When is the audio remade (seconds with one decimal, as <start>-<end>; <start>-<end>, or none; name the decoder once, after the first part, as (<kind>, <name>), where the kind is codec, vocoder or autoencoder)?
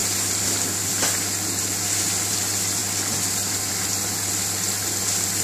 none